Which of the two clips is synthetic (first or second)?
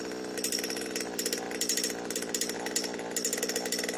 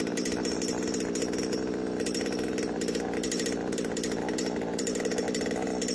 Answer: second